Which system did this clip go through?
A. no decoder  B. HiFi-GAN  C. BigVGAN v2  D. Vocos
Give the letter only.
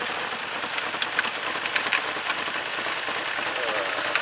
A